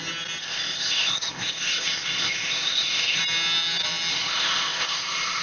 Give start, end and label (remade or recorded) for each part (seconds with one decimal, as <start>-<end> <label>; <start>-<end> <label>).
0.0-0.4 recorded; 0.4-3.2 remade; 3.2-4.1 recorded; 4.1-5.4 remade